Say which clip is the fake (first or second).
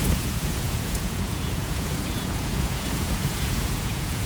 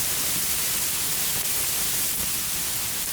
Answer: first